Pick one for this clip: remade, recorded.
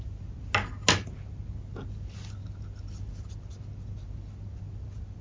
recorded